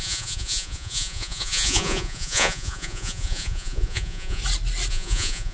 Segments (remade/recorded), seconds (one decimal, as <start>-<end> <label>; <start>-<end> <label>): 0.0-4.4 remade; 4.4-4.9 recorded; 4.9-5.5 remade